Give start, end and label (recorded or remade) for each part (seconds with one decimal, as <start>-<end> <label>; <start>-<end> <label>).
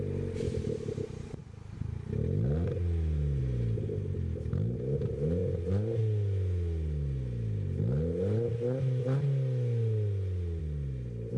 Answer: 0.0-11.4 recorded